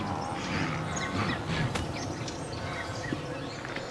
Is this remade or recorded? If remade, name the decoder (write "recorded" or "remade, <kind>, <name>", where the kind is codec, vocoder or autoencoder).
recorded